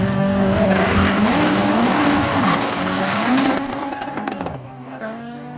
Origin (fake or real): fake